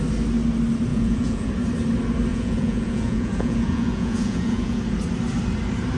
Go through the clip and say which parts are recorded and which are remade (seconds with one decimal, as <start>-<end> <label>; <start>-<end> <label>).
0.0-0.9 recorded; 0.9-1.5 remade; 1.5-2.3 recorded; 2.3-4.8 remade; 4.8-6.0 recorded